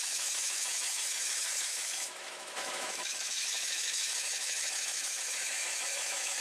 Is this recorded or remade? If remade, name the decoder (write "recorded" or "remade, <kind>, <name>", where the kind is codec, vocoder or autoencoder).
remade, autoencoder, DAC-VAE